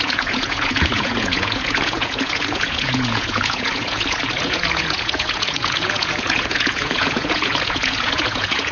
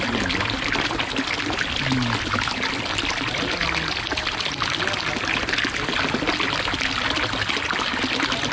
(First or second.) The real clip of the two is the second